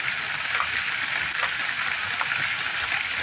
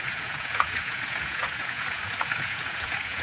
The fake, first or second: second